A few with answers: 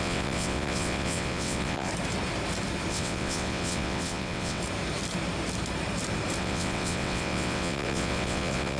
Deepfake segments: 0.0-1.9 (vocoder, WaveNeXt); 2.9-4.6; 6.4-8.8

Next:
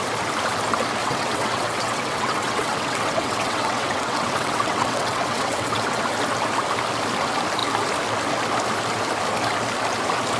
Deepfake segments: 1.0-6.0 (vocoder, WaveNeXt)